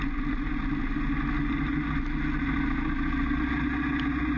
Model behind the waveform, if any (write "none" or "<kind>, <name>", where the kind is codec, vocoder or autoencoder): none